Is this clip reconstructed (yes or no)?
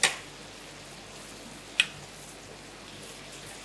no